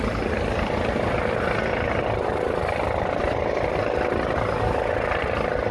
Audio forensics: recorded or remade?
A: recorded